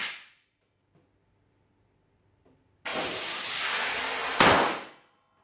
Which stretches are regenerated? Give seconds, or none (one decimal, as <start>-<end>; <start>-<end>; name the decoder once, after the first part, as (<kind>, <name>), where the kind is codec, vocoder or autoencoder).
0.0-1.1 (vocoder, BigVGAN v2); 2.9-3.5; 4.2-4.9